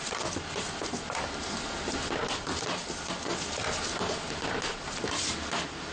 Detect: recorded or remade recorded